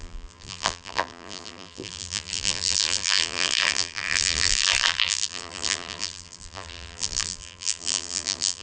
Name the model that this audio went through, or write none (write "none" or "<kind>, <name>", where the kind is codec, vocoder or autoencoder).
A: vocoder, BigVGAN v2